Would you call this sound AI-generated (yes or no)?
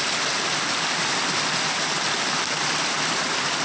no